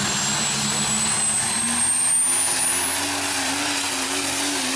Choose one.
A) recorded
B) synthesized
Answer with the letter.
A